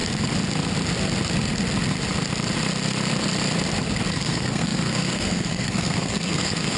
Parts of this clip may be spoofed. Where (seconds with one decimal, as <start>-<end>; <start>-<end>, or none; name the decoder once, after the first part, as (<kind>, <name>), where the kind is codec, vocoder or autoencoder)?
4.1-6.8 (codec, SNAC)